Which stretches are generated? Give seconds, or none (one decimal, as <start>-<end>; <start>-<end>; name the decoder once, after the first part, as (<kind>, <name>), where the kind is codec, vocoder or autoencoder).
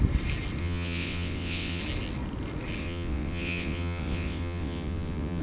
0.6-1.8 (vocoder, WaveNeXt); 2.8-5.4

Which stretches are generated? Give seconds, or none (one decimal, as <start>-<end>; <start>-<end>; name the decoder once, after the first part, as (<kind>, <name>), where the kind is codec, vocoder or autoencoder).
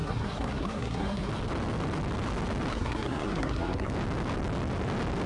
0.0-1.3 (codec, SNAC); 2.7-3.9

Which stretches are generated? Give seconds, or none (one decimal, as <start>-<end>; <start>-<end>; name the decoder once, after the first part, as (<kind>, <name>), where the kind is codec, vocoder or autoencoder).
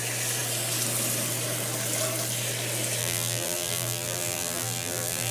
3.0-5.3 (vocoder, BigVGAN v2)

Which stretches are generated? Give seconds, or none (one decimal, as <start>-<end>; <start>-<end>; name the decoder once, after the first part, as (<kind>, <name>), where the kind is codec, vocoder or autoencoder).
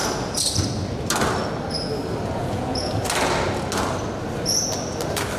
2.4-2.9 (vocoder, Vocos)